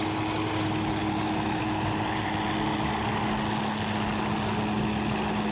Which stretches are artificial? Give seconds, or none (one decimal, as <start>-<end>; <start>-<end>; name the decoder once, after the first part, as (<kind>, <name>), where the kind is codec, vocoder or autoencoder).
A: none